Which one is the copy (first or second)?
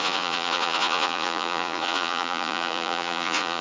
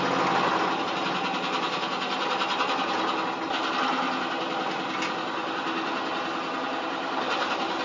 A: first